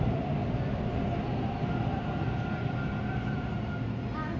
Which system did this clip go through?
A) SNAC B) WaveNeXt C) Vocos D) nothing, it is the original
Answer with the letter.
D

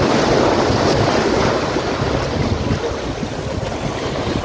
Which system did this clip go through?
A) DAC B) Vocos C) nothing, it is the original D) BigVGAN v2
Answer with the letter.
C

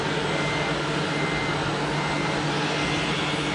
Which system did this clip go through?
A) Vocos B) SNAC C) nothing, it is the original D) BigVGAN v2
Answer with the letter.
C